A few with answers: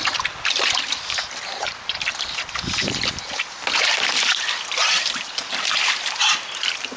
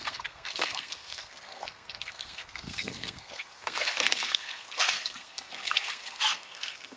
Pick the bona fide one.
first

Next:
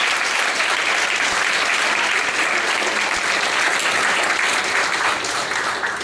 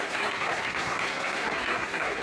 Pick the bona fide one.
first